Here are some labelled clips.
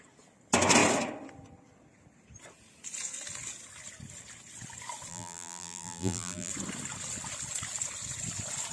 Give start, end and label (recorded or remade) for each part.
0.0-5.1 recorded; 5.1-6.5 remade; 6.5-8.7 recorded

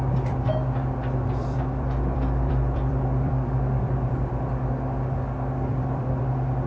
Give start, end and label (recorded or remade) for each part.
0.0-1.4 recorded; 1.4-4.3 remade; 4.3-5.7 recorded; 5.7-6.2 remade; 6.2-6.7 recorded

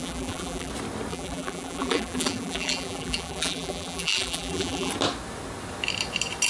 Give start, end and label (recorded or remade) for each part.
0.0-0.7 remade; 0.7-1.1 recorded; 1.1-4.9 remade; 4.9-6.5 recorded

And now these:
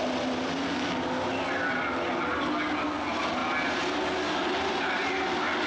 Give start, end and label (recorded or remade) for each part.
0.0-5.7 recorded

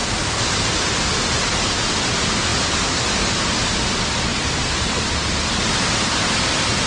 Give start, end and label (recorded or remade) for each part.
0.0-1.6 remade; 1.6-2.5 recorded; 2.5-3.7 remade; 3.7-4.3 recorded; 4.3-5.3 remade; 5.3-6.9 recorded

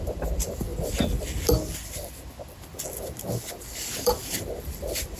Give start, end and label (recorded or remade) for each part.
0.0-0.7 remade; 0.7-3.5 recorded; 3.5-5.2 remade

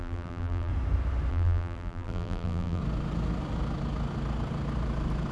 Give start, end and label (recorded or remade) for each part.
0.0-0.7 remade; 0.7-1.3 recorded; 1.3-2.8 remade; 2.8-5.3 recorded